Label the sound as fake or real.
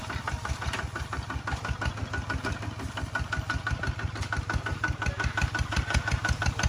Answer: real